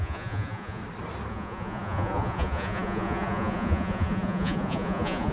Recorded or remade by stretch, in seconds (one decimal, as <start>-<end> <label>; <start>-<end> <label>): 0.0-0.8 remade; 0.8-1.3 recorded; 1.3-5.3 remade